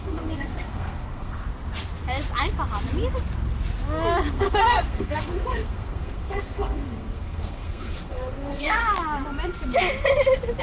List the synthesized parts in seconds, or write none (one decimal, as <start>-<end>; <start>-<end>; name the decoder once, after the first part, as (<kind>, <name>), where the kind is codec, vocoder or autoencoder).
0.0-1.4 (codec, SNAC); 4.3-8.8